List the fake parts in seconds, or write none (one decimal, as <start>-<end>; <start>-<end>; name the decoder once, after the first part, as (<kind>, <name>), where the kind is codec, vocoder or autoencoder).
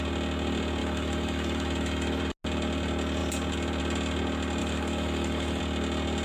0.8-2.2 (autoencoder, DAC-VAE); 4.6-5.6